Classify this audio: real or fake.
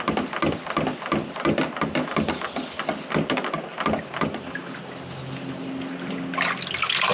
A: real